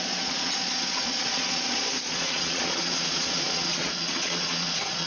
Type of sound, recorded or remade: remade